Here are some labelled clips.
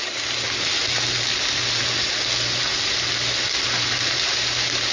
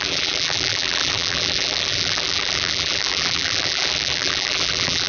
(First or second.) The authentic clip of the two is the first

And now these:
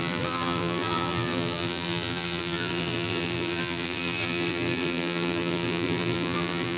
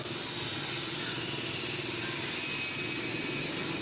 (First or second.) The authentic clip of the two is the second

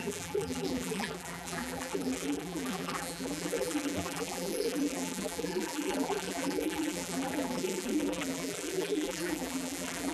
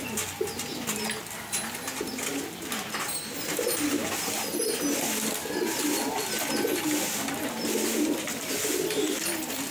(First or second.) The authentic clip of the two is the second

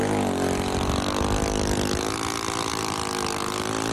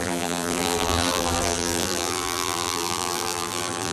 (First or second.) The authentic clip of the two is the first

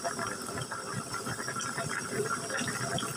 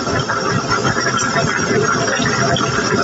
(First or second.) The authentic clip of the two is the second